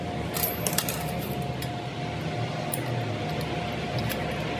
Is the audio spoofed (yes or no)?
no